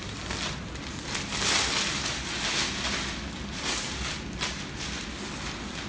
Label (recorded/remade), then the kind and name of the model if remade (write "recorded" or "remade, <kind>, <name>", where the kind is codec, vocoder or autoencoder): recorded